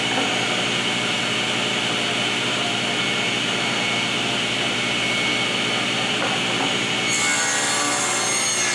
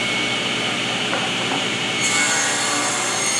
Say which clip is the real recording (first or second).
first